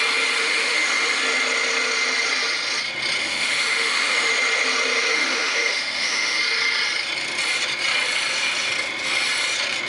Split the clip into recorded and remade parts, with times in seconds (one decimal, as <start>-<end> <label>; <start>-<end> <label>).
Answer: 0.0-0.4 recorded; 0.4-1.2 remade; 1.2-3.2 recorded; 3.2-4.3 remade; 4.3-5.1 recorded; 5.1-6.4 remade; 6.4-9.9 recorded